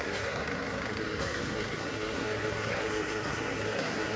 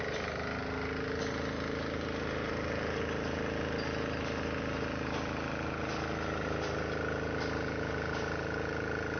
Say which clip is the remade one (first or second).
first